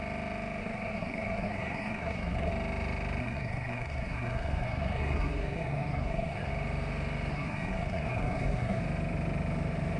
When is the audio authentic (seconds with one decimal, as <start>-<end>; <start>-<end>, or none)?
0.0-0.6; 2.5-3.2; 6.5-7.3; 8.8-10.0